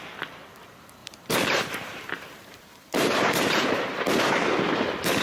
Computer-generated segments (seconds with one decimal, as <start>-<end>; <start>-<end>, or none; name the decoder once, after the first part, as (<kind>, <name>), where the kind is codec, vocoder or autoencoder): 1.0-4.1 (vocoder, BigVGAN v2)